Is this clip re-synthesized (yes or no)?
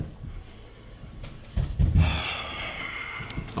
no